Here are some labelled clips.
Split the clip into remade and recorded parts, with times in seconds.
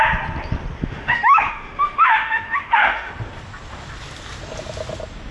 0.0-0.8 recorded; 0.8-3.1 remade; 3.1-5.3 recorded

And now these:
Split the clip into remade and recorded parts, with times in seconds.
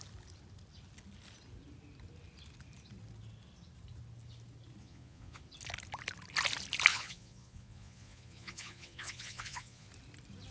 0.0-4.8 recorded; 4.8-5.4 remade; 5.4-6.9 recorded; 6.9-9.9 remade; 9.9-10.5 recorded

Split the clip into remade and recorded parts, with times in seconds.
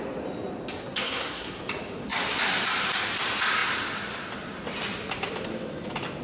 0.0-0.8 recorded; 0.8-1.6 remade; 1.6-6.2 recorded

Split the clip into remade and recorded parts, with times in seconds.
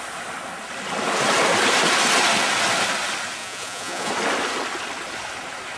0.0-3.4 recorded; 3.4-4.1 remade; 4.1-5.8 recorded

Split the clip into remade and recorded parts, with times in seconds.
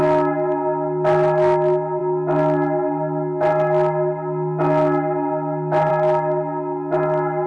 0.0-7.5 recorded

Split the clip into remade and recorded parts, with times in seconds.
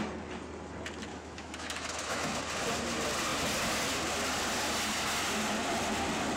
0.0-1.1 recorded; 1.1-2.4 remade; 2.4-6.4 recorded